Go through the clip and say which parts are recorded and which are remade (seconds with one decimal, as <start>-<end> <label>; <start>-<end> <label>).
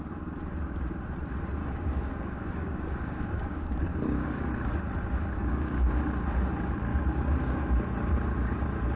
0.0-1.6 recorded; 1.6-4.5 remade; 4.5-5.4 recorded; 5.4-6.0 remade; 6.0-6.9 recorded; 6.9-7.8 remade; 7.8-9.0 recorded